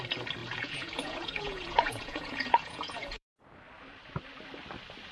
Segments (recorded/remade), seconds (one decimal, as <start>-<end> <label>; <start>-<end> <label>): 0.0-0.4 recorded; 0.4-3.3 remade; 3.3-5.1 recorded